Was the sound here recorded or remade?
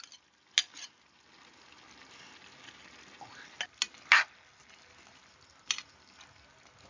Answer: recorded